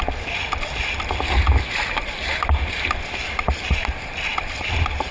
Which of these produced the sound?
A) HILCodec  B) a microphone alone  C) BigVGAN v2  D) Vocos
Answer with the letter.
B